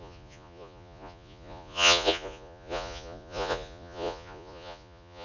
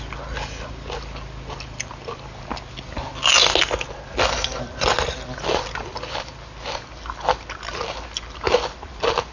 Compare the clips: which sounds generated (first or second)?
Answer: first